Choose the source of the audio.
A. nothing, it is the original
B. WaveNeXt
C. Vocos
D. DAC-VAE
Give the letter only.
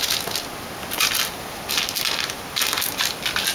A